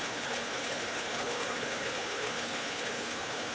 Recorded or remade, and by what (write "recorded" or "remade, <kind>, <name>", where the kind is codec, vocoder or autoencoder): remade, codec, HILCodec